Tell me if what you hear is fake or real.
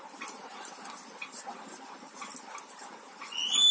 real